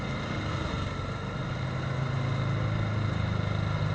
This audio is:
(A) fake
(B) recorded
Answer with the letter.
B